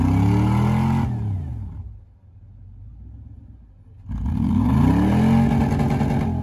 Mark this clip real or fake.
real